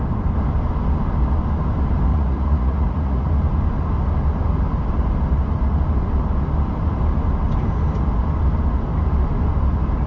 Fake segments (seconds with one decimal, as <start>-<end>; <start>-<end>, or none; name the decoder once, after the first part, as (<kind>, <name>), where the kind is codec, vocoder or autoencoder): 2.1-3.3 (vocoder, Vocos)